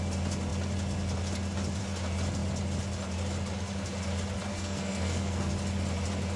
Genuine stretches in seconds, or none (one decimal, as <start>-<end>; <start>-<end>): 0.0-4.5; 5.5-6.4